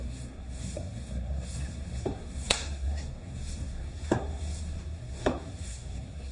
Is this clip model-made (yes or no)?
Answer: yes